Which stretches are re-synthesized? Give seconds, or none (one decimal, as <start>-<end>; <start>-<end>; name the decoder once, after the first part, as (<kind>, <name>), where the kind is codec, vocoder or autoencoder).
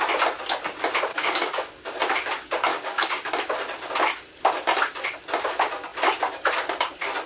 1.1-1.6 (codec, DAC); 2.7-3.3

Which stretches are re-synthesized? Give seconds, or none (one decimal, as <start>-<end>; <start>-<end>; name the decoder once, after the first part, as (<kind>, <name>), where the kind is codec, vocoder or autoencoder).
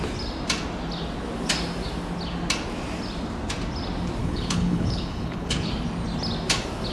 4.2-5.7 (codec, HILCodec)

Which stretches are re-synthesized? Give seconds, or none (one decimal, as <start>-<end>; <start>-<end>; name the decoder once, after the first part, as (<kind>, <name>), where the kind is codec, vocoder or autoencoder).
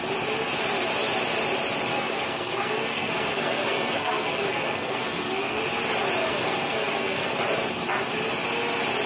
1.9-5.6 (codec, SNAC); 6.2-7.3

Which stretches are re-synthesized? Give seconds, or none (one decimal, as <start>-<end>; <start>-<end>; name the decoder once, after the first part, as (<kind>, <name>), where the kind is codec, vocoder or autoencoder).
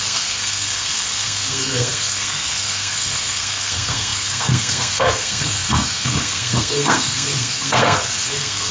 0.0-8.7 (codec, SNAC)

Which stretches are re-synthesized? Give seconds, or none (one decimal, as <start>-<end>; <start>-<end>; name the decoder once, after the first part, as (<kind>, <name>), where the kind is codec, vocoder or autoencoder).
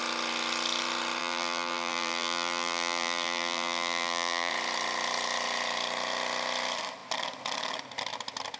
1.2-4.5 (vocoder, BigVGAN v2)